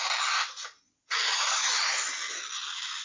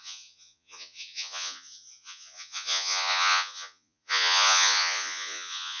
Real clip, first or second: first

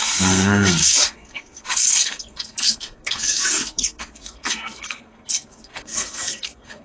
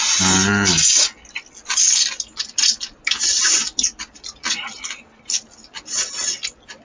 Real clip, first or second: second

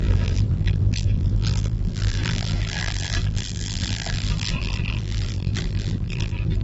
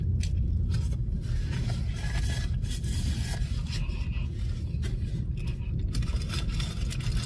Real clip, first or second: second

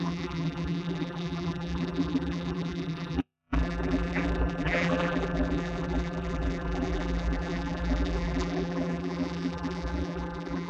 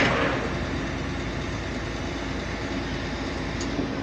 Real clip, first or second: second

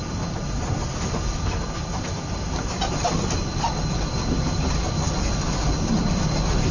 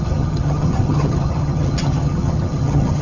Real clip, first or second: first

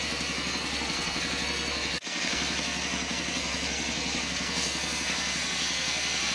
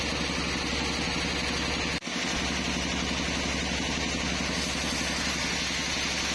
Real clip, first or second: second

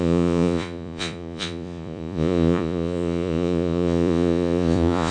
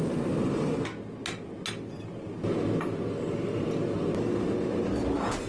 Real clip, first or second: second